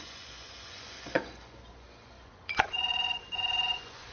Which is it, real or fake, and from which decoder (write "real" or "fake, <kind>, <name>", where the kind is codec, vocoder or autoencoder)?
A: fake, vocoder, Vocos